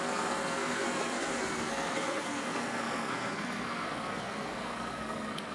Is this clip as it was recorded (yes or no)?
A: no